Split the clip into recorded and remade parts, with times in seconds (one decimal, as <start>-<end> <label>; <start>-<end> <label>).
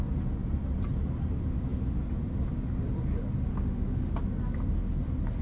0.0-3.5 recorded; 3.5-4.1 remade; 4.1-5.4 recorded